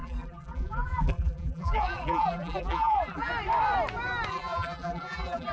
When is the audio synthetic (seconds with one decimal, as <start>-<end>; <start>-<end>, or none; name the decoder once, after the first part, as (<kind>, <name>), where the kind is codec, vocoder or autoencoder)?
0.0-3.3 (vocoder, BigVGAN v2); 4.3-5.5